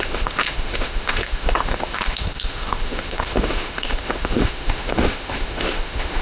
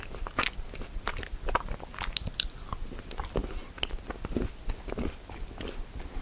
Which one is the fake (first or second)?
first